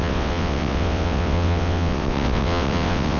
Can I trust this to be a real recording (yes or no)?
no